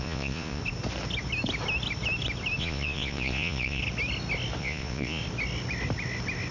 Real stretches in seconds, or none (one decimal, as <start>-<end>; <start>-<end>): 0.6-2.6; 3.8-4.6; 5.2-6.5